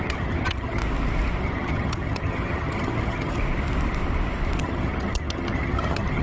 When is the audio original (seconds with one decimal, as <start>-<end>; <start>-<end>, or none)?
0.8-1.4; 3.4-4.6